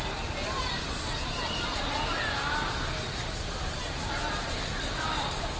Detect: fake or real real